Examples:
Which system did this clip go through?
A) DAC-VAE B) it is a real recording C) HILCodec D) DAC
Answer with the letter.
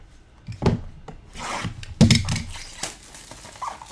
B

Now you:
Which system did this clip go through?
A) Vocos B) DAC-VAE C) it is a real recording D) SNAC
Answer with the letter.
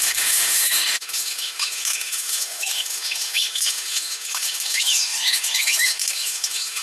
B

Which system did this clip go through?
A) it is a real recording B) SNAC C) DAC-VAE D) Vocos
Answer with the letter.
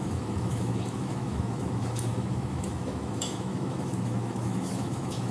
C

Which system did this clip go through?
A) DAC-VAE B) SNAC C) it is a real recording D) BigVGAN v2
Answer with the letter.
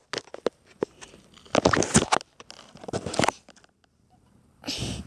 C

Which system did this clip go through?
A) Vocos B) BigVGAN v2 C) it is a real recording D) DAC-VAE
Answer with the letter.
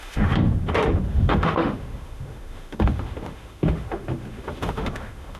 D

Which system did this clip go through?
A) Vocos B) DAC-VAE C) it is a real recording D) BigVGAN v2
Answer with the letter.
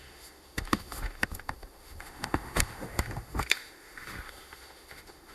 B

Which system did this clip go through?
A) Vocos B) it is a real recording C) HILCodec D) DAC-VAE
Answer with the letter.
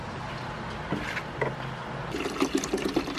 B